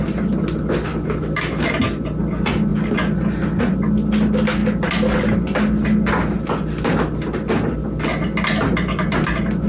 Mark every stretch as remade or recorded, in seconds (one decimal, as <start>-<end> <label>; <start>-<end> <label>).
0.0-9.7 recorded